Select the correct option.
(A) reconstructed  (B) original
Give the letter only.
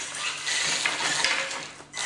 B